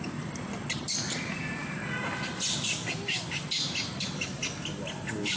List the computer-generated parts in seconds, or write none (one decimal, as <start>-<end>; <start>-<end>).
none